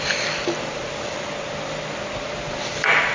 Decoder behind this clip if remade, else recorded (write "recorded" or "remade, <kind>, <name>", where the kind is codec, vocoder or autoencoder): recorded